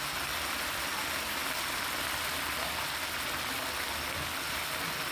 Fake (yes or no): no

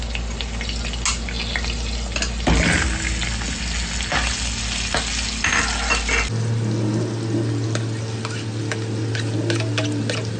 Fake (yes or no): no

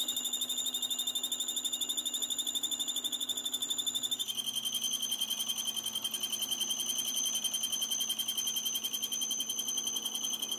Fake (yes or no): no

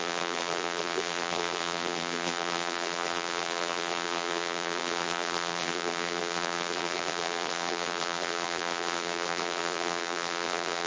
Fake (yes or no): yes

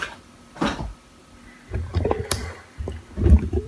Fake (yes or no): yes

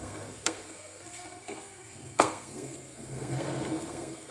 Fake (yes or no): yes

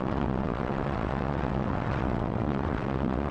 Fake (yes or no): yes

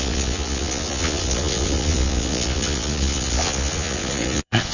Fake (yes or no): yes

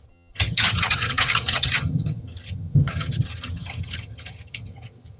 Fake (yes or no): yes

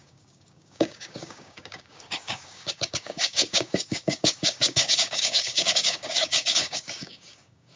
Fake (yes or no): yes